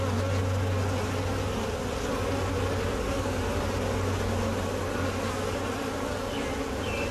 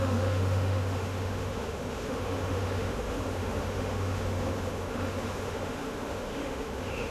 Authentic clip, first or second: first